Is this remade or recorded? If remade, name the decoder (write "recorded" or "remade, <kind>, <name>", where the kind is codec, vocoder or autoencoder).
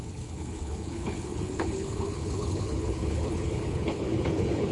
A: remade, codec, HILCodec